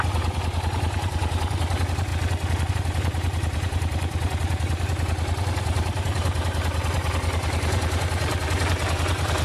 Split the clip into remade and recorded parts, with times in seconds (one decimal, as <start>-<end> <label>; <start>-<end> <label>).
0.0-2.1 remade; 2.1-2.7 recorded; 2.7-9.4 remade